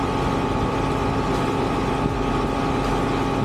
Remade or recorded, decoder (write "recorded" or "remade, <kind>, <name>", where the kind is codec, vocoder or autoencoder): recorded